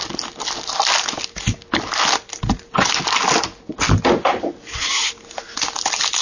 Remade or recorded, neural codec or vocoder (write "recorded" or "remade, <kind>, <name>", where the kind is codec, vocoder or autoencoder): recorded